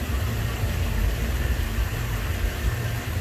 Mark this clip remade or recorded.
remade